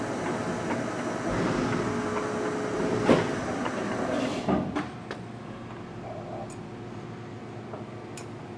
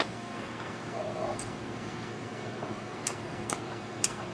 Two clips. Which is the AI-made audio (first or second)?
second